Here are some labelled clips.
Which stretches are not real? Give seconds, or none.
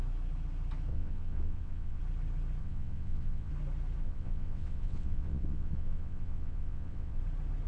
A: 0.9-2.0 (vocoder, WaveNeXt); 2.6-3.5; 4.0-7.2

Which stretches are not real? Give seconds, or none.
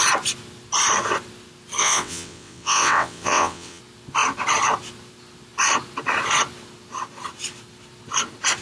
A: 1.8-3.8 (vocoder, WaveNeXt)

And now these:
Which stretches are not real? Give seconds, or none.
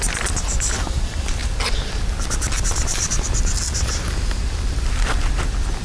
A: none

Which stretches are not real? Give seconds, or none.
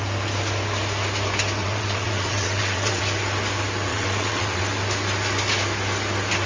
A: 1.6-3.0 (vocoder, WaveNeXt); 3.9-4.6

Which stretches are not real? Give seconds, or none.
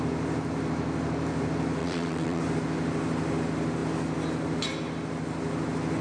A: 1.8-2.4 (vocoder, WaveNeXt)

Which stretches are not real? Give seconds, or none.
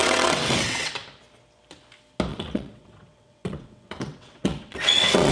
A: 0.0-0.9 (vocoder, WaveNeXt); 2.3-5.3